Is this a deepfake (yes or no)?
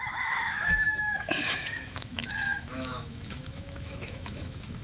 yes